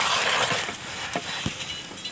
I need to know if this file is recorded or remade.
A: recorded